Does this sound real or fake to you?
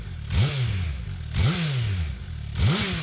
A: real